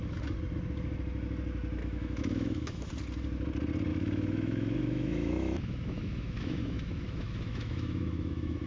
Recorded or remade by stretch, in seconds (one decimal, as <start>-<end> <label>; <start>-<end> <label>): 0.0-1.8 recorded; 1.8-2.9 remade; 2.9-3.9 recorded; 3.9-8.7 remade